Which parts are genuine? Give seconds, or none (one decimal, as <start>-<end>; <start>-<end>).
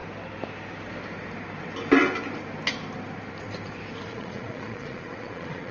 0.0-4.1